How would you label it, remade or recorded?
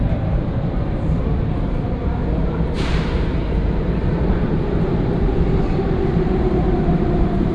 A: remade